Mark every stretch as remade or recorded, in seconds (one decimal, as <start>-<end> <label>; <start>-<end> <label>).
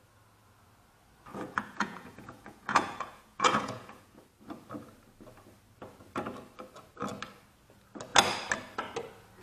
0.0-1.3 recorded; 1.3-4.2 remade; 4.2-9.4 recorded